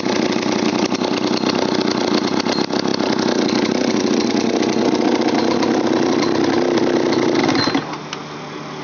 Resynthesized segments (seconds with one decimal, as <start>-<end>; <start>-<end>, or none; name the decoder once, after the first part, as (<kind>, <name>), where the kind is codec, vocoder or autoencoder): none